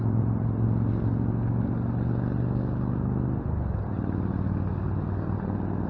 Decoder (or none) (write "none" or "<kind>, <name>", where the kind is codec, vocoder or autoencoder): none